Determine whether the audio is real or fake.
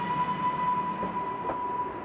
real